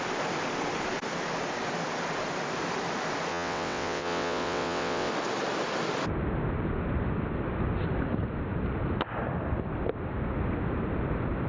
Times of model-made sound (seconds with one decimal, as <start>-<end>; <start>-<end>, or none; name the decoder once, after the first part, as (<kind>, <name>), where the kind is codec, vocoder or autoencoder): 3.3-5.1 (vocoder, WaveNeXt)

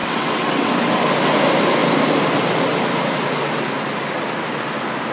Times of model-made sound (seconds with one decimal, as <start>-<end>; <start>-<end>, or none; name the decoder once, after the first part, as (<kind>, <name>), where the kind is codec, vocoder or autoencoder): 0.0-0.7 (vocoder, WaveNeXt)

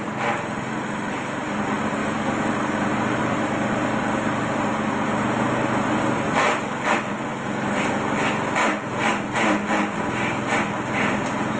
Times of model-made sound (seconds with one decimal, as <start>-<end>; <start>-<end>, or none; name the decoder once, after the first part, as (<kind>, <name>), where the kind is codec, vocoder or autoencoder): none

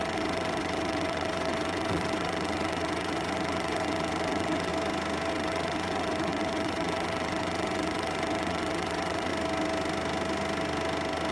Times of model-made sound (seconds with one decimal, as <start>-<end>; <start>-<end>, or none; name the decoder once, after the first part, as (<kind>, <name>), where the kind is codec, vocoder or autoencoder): 0.0-4.7 (vocoder, WaveNeXt); 5.3-9.3

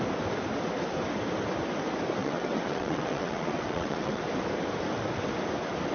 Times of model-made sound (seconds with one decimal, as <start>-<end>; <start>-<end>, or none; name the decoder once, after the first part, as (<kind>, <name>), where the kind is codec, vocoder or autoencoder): 2.2-4.2 (vocoder, WaveNeXt)

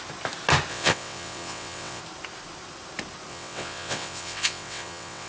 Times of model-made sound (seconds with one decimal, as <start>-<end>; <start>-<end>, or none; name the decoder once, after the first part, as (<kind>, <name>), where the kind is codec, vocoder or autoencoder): 0.7-2.0 (vocoder, WaveNeXt); 3.3-5.3

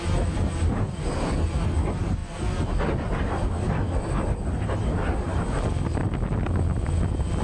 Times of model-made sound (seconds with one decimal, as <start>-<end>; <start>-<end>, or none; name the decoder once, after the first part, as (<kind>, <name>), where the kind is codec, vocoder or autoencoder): none

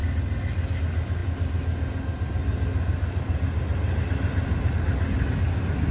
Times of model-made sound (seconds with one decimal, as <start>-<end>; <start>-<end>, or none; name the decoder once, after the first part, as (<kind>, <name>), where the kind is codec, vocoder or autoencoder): none